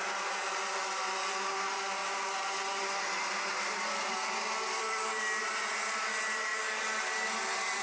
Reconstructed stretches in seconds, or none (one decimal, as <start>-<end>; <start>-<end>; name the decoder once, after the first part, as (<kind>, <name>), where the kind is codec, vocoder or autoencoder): none